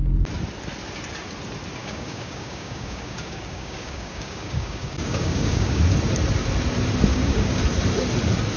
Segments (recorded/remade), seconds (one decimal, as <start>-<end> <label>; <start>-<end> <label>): 0.0-1.8 recorded; 1.8-5.8 remade; 5.8-7.1 recorded; 7.1-7.6 remade; 7.6-8.6 recorded